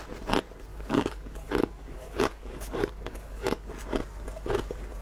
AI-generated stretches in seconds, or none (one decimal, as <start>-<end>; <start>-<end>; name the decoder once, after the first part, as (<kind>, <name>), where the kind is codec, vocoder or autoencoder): 0.7-3.7 (codec, DAC)